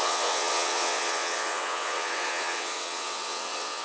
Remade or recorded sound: remade